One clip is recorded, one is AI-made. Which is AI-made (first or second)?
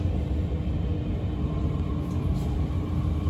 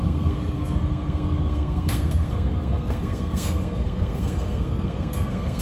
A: second